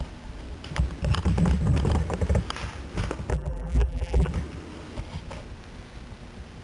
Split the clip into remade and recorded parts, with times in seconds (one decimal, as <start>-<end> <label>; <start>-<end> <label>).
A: 0.0-3.3 recorded; 3.3-4.3 remade; 4.3-6.6 recorded